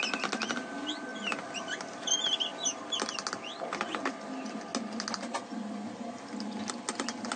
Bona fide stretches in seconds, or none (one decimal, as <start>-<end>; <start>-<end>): 0.0-7.4